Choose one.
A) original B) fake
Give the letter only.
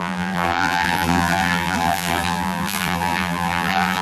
B